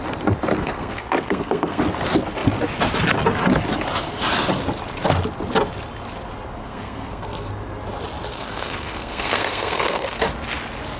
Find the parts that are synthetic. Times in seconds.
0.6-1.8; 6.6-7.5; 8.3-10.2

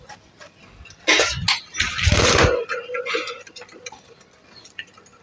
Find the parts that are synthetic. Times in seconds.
none

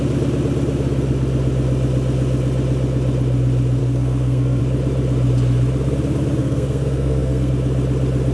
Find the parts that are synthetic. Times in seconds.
3.8-4.6; 6.4-7.5

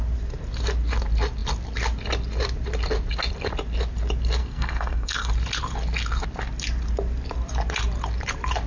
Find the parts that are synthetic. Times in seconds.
4.4-5.3

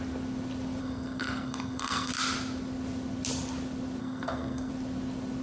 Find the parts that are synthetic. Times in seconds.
0.8-2.1; 4.0-4.7